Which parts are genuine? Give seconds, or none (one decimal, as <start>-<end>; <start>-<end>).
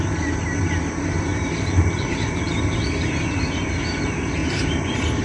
0.0-1.3; 2.5-4.4